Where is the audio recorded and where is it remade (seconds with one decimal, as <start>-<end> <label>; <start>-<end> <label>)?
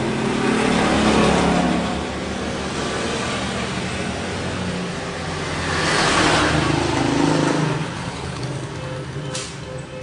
0.0-7.8 recorded; 7.8-8.4 remade; 8.4-10.0 recorded